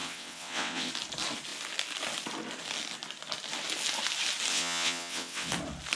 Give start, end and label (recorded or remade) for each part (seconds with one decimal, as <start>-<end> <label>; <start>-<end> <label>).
0.0-0.9 remade; 0.9-4.5 recorded; 4.5-5.5 remade; 5.5-6.0 recorded